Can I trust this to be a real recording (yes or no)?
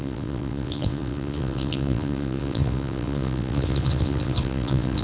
no